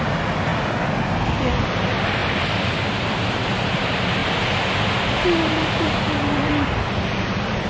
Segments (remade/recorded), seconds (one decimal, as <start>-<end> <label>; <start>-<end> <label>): 0.0-0.5 remade; 0.5-1.7 recorded; 1.7-4.2 remade; 4.2-5.4 recorded; 5.4-7.7 remade